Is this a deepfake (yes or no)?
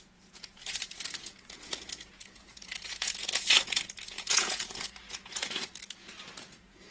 yes